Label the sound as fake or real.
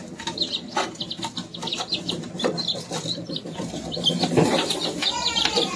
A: real